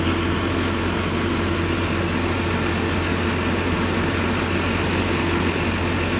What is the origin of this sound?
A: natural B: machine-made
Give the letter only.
A